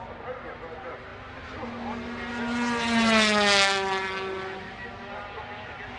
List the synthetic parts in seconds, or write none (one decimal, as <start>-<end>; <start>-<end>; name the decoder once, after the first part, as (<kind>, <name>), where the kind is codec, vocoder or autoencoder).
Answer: none

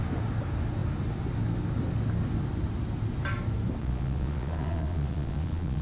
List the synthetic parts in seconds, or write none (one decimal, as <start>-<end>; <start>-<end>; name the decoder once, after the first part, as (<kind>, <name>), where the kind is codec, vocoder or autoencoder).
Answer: 3.8-5.8 (vocoder, Vocos)

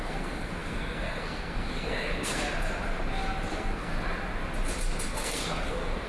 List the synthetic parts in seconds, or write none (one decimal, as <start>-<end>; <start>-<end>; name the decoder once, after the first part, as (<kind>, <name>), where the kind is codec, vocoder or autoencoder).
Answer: 0.0-2.4 (codec, SNAC); 3.5-3.9; 5.1-6.1

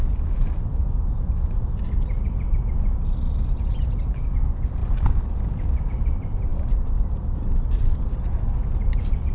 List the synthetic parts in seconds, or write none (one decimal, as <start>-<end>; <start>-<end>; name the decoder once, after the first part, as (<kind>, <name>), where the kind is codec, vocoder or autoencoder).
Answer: none

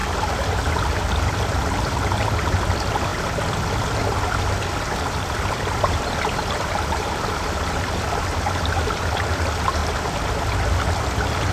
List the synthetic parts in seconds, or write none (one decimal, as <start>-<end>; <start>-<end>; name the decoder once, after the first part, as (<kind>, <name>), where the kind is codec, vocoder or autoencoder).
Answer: 0.0-1.4 (vocoder, BigVGAN v2); 3.1-7.3